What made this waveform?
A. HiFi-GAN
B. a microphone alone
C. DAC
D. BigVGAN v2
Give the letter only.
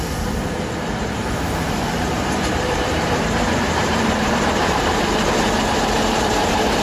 D